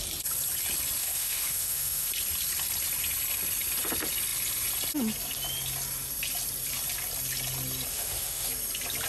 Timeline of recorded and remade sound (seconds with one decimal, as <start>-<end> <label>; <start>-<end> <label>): 0.0-1.0 recorded; 1.0-2.1 remade; 2.1-7.9 recorded; 7.9-8.5 remade; 8.5-9.1 recorded